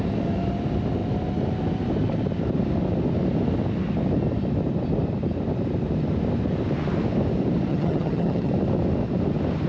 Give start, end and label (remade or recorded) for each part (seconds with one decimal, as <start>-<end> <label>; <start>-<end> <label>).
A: 0.0-7.7 recorded; 7.7-8.5 remade; 8.5-9.7 recorded